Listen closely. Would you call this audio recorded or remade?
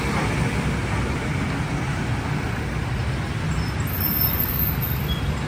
recorded